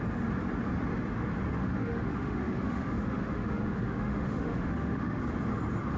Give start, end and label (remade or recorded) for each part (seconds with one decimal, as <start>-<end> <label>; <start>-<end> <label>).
0.0-1.6 recorded; 1.6-5.2 remade; 5.2-6.0 recorded